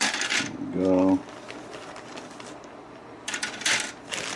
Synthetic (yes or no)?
no